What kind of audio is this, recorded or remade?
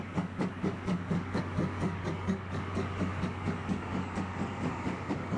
remade